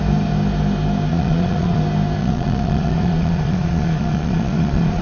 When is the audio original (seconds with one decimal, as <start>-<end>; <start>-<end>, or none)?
0.0-1.1; 1.8-2.2